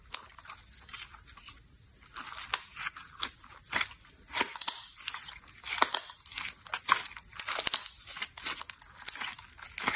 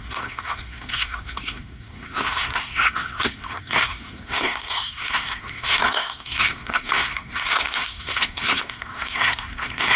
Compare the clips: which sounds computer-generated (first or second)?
second